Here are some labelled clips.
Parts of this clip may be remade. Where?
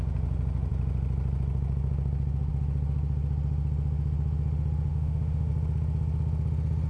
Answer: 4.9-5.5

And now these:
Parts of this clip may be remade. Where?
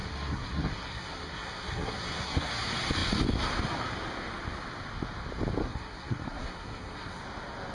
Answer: 0.0-2.5; 5.6-7.2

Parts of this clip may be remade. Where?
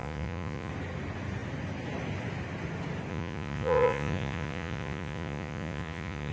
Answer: 0.0-0.7; 3.1-6.3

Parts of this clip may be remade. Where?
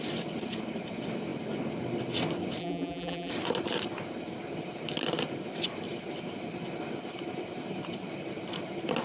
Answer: 2.6-3.3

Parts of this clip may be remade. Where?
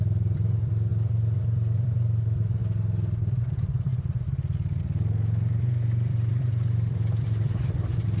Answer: 0.0-2.6; 3.4-3.9; 4.8-8.2